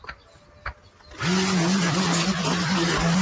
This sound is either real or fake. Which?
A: real